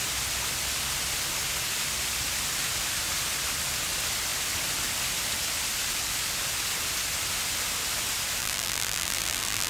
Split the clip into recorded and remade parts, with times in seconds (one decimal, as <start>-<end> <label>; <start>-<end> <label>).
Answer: 0.0-8.4 recorded; 8.4-9.7 remade